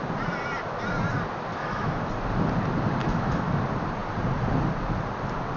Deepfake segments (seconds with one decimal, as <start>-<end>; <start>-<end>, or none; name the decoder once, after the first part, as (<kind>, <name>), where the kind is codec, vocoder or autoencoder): 1.5-2.1 (autoencoder, DAC-VAE); 3.0-3.6